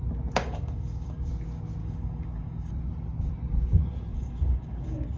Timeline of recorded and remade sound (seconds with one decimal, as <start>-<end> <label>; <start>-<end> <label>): 0.0-0.4 recorded; 0.4-1.3 remade; 1.3-1.8 recorded; 1.8-2.7 remade; 2.7-4.1 recorded; 4.1-5.2 remade